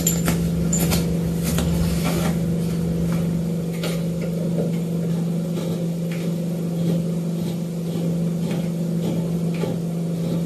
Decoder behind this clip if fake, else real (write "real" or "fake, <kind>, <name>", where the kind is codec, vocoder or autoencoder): real